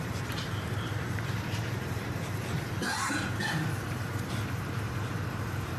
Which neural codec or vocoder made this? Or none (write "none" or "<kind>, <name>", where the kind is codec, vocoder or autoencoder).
vocoder, BigVGAN v2